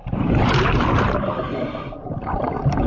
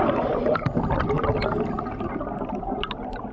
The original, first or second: second